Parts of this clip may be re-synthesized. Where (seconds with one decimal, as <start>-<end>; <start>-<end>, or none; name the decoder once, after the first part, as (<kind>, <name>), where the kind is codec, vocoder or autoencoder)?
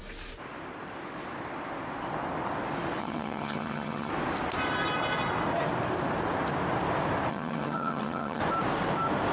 3.0-4.1 (vocoder, HiFi-GAN); 7.3-8.4